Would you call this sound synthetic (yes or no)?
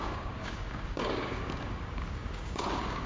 yes